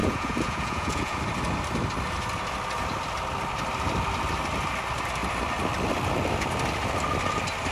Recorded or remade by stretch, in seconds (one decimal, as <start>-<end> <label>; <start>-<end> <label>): 0.0-1.2 remade; 1.2-7.7 recorded